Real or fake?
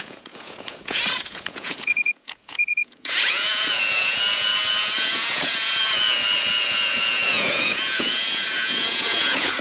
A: fake